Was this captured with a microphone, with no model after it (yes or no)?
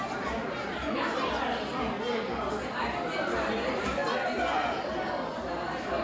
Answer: yes